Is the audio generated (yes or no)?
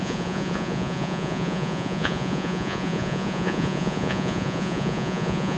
yes